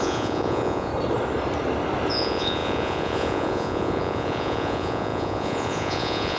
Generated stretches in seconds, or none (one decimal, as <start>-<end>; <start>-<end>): 0.0-0.9; 2.1-6.4